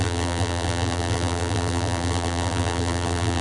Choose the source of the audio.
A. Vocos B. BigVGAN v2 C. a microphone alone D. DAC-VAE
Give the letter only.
B